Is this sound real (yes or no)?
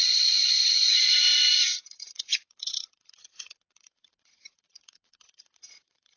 no